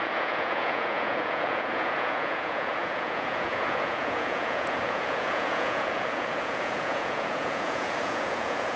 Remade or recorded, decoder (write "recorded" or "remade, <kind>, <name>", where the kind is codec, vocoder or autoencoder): remade, vocoder, Vocos